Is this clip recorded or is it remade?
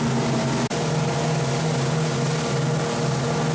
recorded